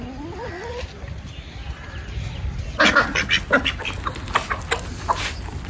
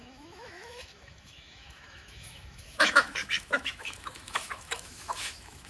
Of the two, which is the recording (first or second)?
first